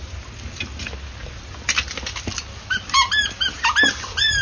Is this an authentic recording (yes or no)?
yes